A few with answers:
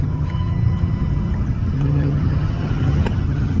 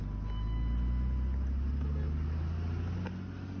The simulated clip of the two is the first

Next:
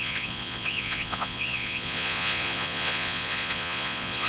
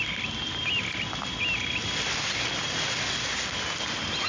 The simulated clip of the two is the first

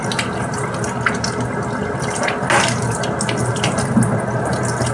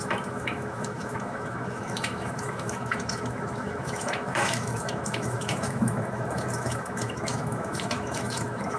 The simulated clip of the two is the second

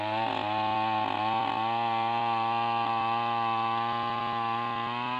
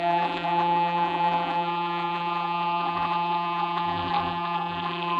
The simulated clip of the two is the second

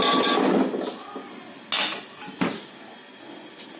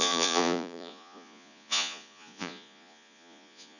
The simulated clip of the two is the second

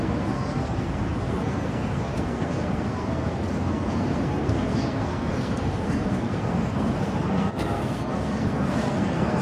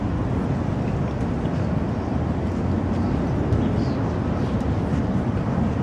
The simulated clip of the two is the first